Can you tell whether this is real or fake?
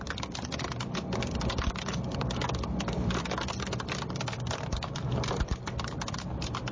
fake